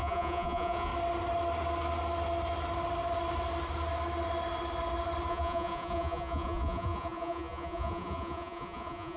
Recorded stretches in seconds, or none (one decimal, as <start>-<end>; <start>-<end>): 0.9-5.3

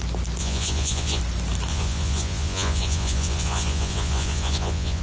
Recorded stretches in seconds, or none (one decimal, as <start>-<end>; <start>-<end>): 0.0-0.4; 1.2-1.7

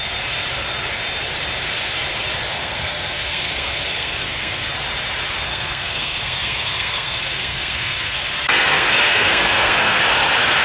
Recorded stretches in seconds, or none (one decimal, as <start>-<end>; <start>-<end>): 0.0-2.6; 4.7-5.5; 10.0-10.6

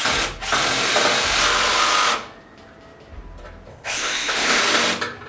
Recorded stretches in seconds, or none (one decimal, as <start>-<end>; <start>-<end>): 0.0-3.7; 4.6-5.3

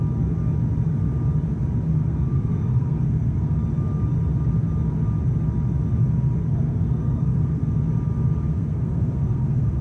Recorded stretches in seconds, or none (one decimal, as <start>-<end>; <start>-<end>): 0.0-2.0; 3.6-6.4; 7.6-8.5

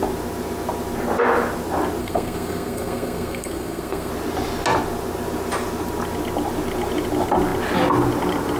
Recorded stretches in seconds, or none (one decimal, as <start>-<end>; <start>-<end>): 0.0-2.0; 4.1-8.6